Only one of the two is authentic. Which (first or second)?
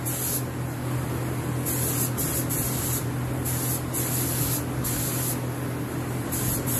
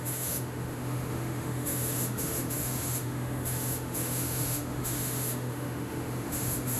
first